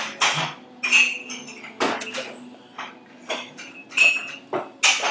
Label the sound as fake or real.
real